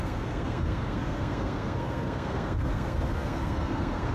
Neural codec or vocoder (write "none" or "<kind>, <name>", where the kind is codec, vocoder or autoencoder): codec, SNAC